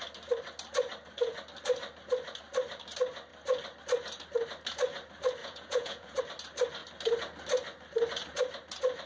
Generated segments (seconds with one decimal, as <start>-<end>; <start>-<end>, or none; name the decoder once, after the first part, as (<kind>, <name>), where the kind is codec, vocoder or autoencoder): 5.4-6.2 (vocoder, Vocos)